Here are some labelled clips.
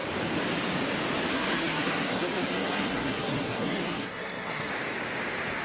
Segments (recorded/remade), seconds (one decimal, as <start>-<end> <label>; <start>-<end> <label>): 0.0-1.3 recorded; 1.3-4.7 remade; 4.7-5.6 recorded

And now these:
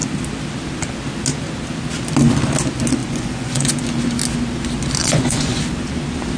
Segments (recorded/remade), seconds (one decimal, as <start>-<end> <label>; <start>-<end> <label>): 0.0-3.0 recorded; 3.0-3.8 remade; 3.8-5.0 recorded; 5.0-5.6 remade; 5.6-6.4 recorded

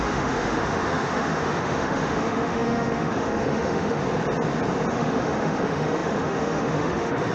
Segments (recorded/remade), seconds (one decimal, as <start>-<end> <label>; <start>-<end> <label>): 0.0-4.0 remade; 4.0-4.9 recorded; 4.9-7.3 remade

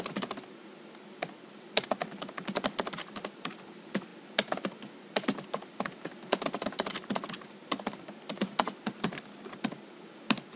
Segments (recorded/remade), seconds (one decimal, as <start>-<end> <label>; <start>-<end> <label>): 0.0-10.6 recorded

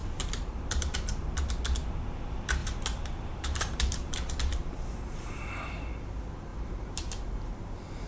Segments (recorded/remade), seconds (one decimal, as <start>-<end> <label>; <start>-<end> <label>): 0.0-1.4 remade; 1.4-2.6 recorded; 2.6-5.8 remade; 5.8-6.5 recorded; 6.5-8.1 remade

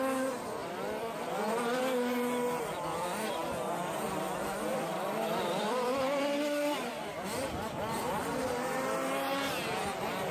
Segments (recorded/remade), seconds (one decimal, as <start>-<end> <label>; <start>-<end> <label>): 0.0-0.6 recorded; 0.6-1.8 remade; 1.8-4.7 recorded; 4.7-8.4 remade; 8.4-10.3 recorded